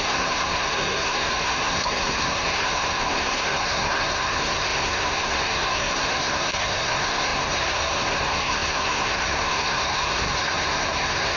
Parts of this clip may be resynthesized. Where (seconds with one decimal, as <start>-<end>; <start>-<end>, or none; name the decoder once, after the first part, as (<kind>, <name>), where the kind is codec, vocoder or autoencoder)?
0.0-11.4 (codec, SNAC)